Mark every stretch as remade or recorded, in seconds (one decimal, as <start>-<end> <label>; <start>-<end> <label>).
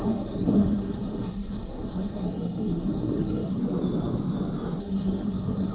0.0-3.6 remade; 3.6-4.8 recorded; 4.8-5.7 remade